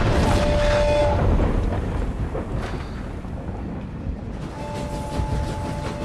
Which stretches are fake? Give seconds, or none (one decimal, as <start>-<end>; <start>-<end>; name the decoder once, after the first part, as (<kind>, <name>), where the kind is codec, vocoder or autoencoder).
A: none